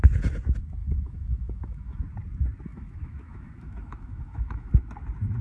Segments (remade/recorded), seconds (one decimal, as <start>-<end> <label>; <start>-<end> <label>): 0.0-0.8 recorded; 0.8-2.0 remade; 2.0-2.7 recorded; 2.7-4.7 remade; 4.7-5.4 recorded